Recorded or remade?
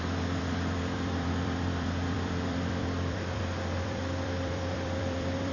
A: remade